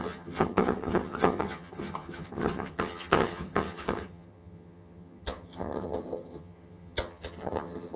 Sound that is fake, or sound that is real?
fake